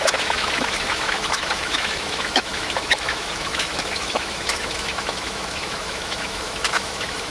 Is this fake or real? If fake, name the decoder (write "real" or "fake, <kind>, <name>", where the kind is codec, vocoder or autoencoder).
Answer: fake, autoencoder, DAC-VAE